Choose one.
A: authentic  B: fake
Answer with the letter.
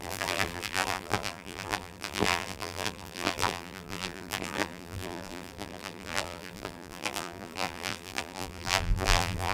B